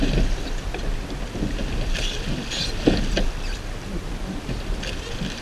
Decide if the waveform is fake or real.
real